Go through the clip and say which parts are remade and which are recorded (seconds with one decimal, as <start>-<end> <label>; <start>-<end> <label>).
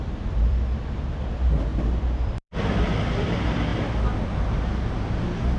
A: 0.0-3.7 remade; 3.7-4.9 recorded; 4.9-5.6 remade